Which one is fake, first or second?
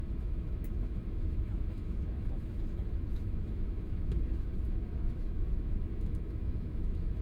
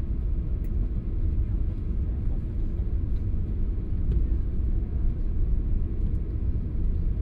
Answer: first